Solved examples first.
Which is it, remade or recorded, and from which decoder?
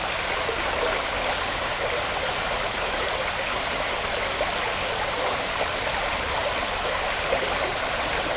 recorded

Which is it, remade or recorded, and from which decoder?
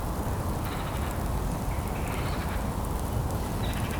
recorded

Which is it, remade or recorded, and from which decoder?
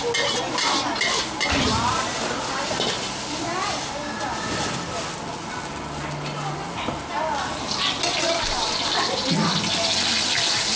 recorded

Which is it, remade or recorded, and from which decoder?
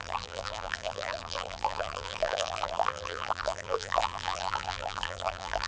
remade, vocoder, BigVGAN v2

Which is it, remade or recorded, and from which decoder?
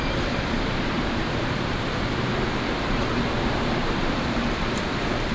remade, vocoder, BigVGAN v2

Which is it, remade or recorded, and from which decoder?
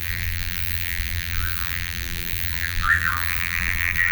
remade, vocoder, BigVGAN v2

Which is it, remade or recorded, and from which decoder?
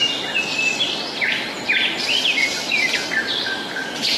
remade, vocoder, BigVGAN v2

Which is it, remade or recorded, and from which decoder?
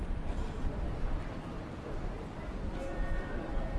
remade, vocoder, BigVGAN v2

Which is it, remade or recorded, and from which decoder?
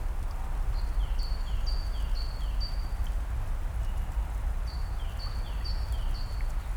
recorded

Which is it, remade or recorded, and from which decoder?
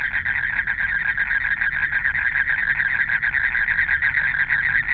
recorded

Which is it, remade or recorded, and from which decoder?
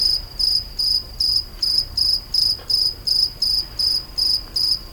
remade, vocoder, BigVGAN v2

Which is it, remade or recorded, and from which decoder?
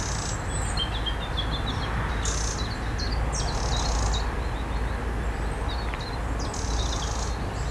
recorded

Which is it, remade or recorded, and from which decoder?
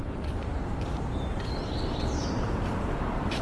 remade, vocoder, BigVGAN v2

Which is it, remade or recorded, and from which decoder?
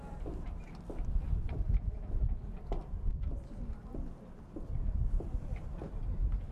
remade, vocoder, BigVGAN v2